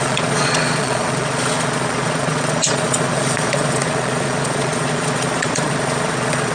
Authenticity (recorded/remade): remade